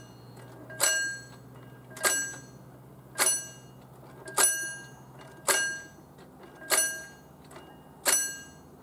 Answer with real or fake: real